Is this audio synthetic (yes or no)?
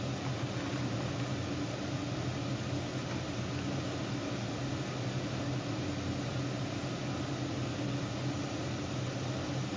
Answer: no